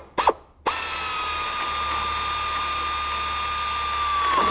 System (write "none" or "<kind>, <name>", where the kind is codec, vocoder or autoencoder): none